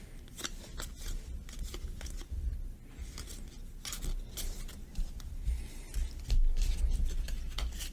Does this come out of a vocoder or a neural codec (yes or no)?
no